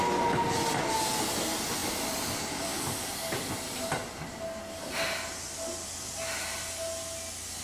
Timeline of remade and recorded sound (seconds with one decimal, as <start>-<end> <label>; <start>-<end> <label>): 0.0-1.8 recorded; 1.8-4.6 remade; 4.6-7.6 recorded